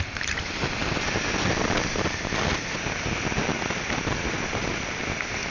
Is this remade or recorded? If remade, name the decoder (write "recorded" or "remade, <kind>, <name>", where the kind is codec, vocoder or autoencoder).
recorded